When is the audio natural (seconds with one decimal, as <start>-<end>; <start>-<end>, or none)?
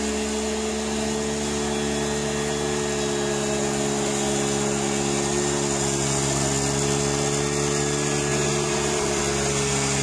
0.0-8.3; 9.2-10.0